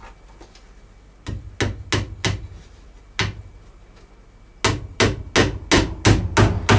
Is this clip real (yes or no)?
yes